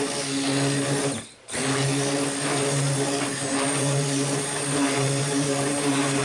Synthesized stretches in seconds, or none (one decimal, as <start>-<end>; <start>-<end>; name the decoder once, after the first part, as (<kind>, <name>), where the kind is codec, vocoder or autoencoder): 3.3-6.2 (vocoder, BigVGAN v2)